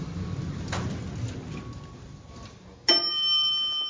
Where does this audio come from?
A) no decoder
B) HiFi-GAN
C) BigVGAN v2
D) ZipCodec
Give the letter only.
A